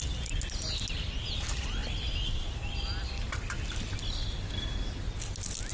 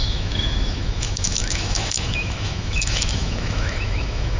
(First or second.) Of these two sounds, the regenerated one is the second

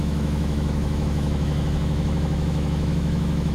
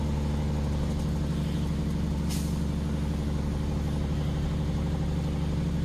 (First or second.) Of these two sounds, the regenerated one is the first